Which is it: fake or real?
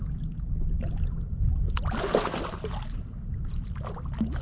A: real